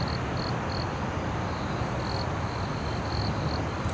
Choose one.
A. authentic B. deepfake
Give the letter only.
A